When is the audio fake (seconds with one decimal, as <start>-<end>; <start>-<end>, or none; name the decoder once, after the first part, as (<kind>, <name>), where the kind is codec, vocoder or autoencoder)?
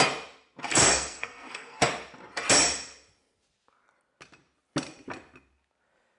0.7-1.8 (codec, SNAC)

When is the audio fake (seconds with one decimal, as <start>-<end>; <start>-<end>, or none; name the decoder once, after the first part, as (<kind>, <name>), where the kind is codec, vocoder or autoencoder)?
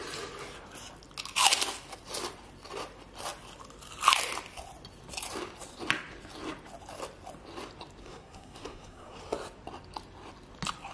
8.0-9.2 (codec, SNAC)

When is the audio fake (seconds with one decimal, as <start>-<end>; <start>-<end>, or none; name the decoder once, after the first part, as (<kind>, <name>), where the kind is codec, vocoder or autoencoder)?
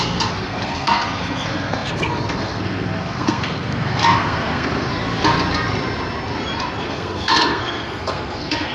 0.0-4.9 (codec, SNAC); 6.8-8.7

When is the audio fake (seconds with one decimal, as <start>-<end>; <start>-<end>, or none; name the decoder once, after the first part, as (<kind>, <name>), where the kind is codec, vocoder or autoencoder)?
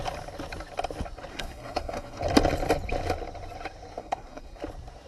1.3-2.2 (codec, SNAC); 4.0-4.6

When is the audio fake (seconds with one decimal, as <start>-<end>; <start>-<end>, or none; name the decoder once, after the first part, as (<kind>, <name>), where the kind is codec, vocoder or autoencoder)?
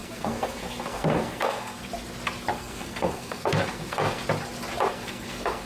0.0-1.9 (codec, SNAC); 2.5-4.2; 4.9-5.7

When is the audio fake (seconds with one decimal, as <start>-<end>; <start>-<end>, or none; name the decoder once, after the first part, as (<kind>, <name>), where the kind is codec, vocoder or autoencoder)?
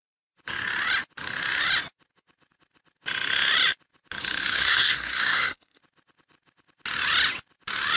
4.4-5.8 (codec, SNAC)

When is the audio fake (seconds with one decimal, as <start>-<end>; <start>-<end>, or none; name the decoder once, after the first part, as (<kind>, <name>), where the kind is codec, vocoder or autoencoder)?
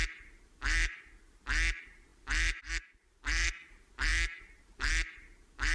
none